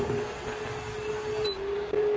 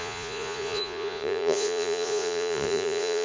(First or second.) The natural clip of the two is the first